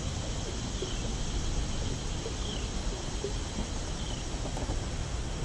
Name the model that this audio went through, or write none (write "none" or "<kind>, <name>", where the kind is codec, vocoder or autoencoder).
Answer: none